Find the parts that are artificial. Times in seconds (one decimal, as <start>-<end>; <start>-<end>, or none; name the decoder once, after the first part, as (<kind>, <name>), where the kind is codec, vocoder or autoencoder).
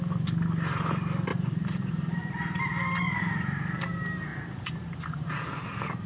1.3-2.2 (vocoder, BigVGAN v2); 4.3-5.3